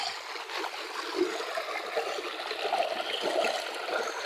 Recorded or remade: recorded